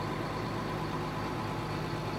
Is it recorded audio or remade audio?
recorded